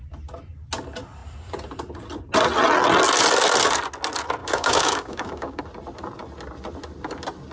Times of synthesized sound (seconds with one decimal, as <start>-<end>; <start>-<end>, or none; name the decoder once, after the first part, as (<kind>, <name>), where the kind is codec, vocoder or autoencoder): 4.4-5.6 (codec, DAC)